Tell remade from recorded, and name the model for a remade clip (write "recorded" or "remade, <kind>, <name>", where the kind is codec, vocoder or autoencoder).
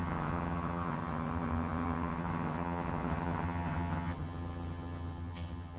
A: remade, vocoder, HiFi-GAN